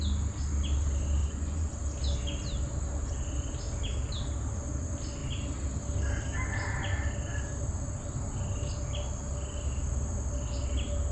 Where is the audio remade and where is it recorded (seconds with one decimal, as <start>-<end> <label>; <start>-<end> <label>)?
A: 0.0-1.2 recorded; 1.2-1.7 remade; 1.7-11.1 recorded